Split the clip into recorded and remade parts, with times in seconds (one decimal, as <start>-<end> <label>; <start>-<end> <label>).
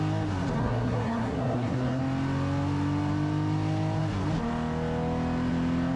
0.0-0.6 recorded; 0.6-2.0 remade; 2.0-6.0 recorded